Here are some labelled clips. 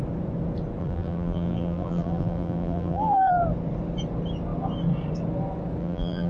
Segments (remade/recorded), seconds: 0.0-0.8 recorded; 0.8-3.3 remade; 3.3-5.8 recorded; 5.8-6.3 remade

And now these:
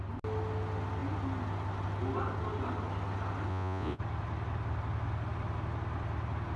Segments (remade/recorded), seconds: 0.0-3.5 recorded; 3.5-4.0 remade; 4.0-6.6 recorded

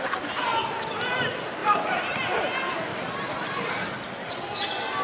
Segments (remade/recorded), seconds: 0.0-1.6 recorded; 1.6-2.4 remade; 2.4-2.9 recorded; 2.9-3.7 remade; 3.7-5.0 recorded